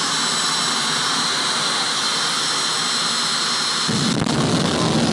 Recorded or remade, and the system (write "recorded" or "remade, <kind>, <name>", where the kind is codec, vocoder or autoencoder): recorded